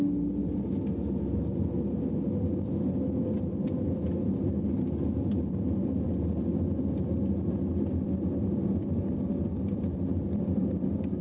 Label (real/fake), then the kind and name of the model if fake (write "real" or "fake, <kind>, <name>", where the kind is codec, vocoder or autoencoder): real